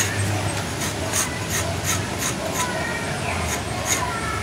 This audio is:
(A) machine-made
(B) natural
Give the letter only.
B